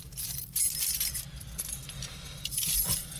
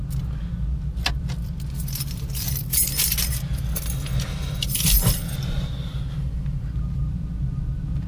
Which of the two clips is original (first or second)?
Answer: second